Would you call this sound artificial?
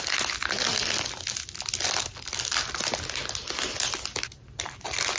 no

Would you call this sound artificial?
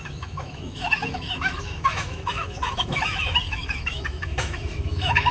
yes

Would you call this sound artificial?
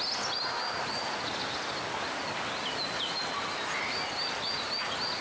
no